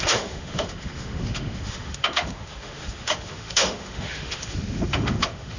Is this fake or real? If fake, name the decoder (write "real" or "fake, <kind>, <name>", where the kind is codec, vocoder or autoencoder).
fake, autoencoder, DAC-VAE